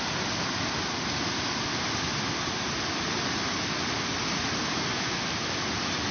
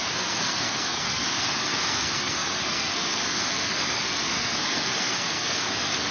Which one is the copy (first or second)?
second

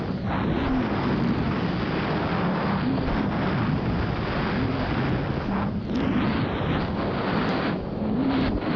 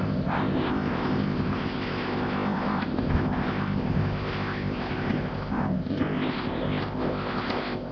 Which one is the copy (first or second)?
second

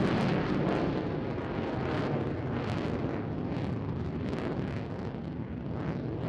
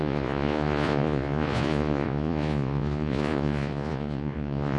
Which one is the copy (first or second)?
second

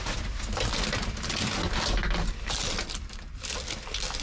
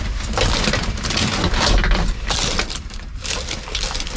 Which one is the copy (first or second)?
second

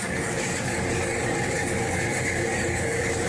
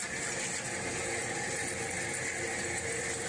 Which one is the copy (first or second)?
first